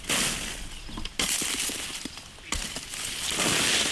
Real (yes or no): yes